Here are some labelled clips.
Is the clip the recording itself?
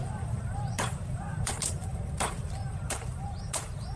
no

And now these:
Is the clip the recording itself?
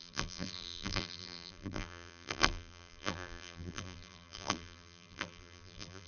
no